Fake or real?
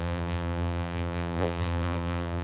fake